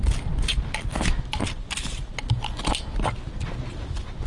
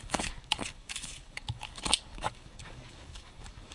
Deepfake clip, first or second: second